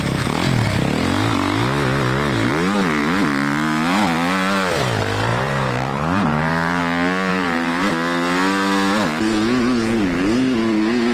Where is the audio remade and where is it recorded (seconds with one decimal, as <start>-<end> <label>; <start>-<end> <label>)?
0.0-5.3 recorded; 5.3-6.8 remade; 6.8-7.3 recorded; 7.3-7.9 remade; 7.9-11.1 recorded